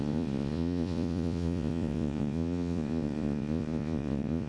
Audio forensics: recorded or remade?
remade